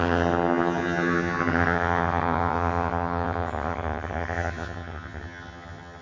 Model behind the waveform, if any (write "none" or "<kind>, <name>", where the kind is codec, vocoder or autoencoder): vocoder, HiFi-GAN